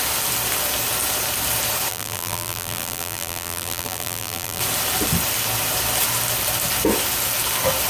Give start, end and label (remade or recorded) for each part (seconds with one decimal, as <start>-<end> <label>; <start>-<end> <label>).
0.0-1.9 recorded; 1.9-4.6 remade; 4.6-7.9 recorded